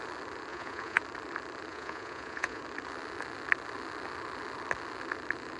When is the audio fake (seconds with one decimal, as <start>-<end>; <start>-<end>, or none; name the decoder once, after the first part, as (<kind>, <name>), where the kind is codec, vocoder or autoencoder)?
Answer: 0.5-1.0 (vocoder, Vocos); 1.7-2.6

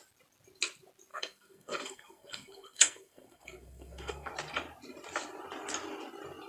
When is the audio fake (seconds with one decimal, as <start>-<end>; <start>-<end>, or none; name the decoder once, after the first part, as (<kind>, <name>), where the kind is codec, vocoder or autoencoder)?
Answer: 1.1-4.3 (codec, SNAC)

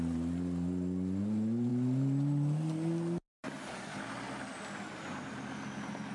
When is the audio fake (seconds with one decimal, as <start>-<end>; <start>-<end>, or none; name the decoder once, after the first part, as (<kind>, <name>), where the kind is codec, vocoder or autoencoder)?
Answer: none

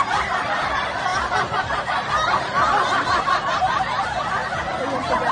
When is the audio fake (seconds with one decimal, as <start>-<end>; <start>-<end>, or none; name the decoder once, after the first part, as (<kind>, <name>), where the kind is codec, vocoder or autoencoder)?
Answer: 0.0-1.1 (vocoder, BigVGAN v2); 2.1-4.4

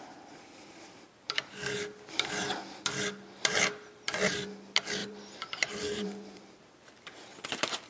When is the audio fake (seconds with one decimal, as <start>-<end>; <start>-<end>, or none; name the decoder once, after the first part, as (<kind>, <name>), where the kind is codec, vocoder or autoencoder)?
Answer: 5.0-6.6 (vocoder, BigVGAN v2)

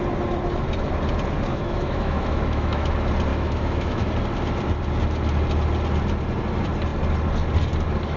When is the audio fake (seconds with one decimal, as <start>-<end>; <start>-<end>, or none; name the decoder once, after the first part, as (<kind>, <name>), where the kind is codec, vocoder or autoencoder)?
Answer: 1.5-2.9 (autoencoder, DAC-VAE); 3.3-4.1